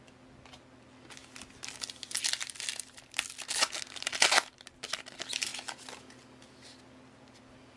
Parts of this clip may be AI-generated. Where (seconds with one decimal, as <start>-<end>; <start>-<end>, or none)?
none